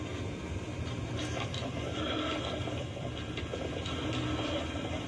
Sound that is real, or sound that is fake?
fake